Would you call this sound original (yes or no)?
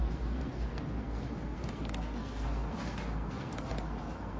no